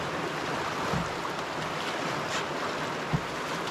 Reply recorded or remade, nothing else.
recorded